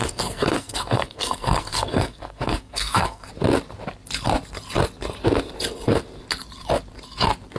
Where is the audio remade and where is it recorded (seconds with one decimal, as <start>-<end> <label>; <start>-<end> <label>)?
0.0-3.3 remade; 3.3-7.6 recorded